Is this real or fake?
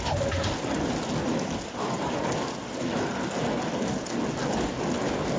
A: real